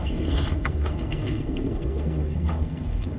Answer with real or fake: fake